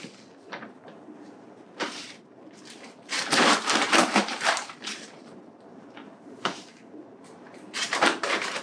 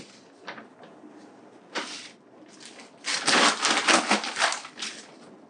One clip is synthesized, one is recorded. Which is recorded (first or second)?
second